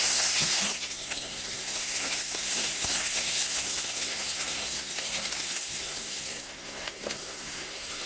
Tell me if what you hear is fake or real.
fake